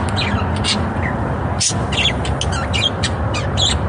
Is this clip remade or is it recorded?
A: recorded